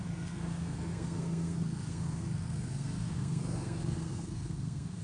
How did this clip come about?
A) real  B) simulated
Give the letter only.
B